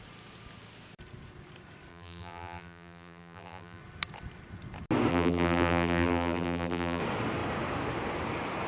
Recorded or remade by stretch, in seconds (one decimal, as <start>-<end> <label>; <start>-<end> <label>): 0.0-1.9 recorded; 1.9-3.8 remade; 3.8-5.1 recorded; 5.1-7.0 remade; 7.0-8.7 recorded